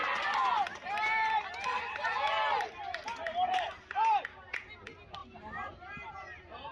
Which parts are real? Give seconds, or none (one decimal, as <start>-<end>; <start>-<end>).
0.0-5.2; 6.1-6.7